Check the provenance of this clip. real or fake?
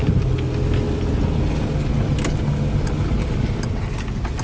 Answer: real